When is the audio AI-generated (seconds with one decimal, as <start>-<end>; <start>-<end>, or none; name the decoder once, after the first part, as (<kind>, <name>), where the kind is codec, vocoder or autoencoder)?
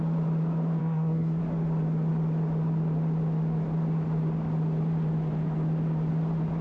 0.8-1.4 (codec, SNAC)